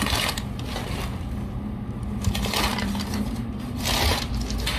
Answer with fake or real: real